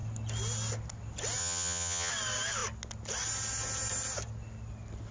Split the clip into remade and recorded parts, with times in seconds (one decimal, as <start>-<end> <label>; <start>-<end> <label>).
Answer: 0.0-1.4 recorded; 1.4-2.1 remade; 2.1-5.1 recorded